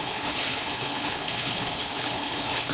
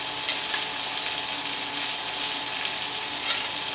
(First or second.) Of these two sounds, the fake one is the first